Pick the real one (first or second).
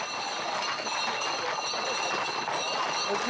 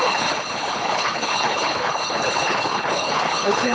first